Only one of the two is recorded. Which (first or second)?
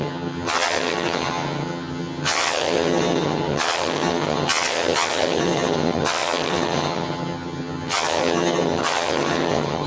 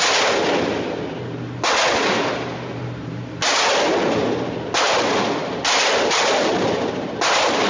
second